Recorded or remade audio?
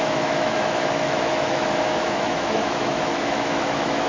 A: remade